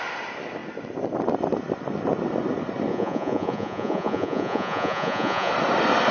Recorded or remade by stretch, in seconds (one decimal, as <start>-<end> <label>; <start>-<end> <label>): 0.0-2.9 recorded; 2.9-5.5 remade; 5.5-6.1 recorded